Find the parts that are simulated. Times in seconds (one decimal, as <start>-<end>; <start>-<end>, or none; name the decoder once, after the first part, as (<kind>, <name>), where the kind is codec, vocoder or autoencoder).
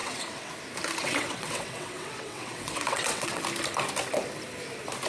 0.0-0.5 (vocoder, WaveNeXt); 1.0-3.4